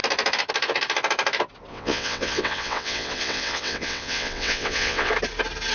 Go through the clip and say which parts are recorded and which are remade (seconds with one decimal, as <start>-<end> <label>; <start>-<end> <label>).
0.0-1.7 recorded; 1.7-5.1 remade; 5.1-5.7 recorded